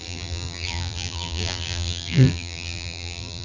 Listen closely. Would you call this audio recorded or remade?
remade